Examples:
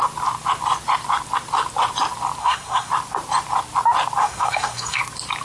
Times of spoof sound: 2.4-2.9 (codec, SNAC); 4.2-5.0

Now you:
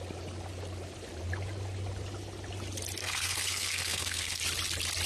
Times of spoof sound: 3.0-4.4 (codec, SNAC)

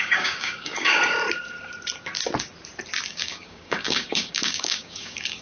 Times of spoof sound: 0.0-1.0 (codec, DAC); 3.1-5.4

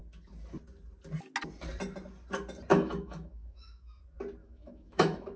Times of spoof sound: 2.7-4.0 (autoencoder, DAC-VAE); 4.4-5.4

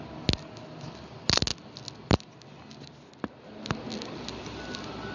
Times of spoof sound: none

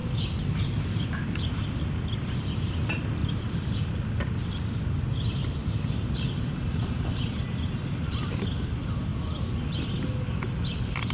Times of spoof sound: 0.0-1.5 (vocoder, BigVGAN v2); 3.2-3.8; 5.6-7.4

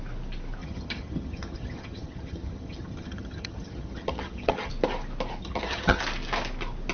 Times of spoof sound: 0.6-4.7 (vocoder, HiFi-GAN); 5.4-6.0

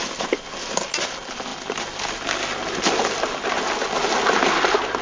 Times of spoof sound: none